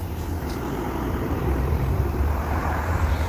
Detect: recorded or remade remade